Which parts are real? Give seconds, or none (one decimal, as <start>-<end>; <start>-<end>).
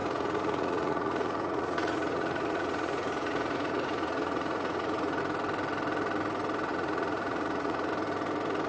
5.2-6.7; 7.9-8.7